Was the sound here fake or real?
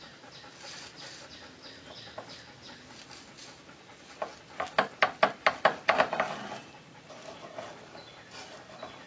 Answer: real